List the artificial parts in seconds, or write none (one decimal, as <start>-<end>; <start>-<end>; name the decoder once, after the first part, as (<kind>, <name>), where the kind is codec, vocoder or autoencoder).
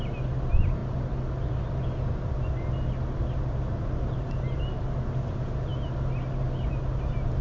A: none